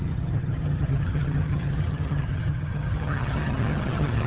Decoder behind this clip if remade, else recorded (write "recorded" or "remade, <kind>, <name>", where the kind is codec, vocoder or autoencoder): remade, vocoder, HiFi-GAN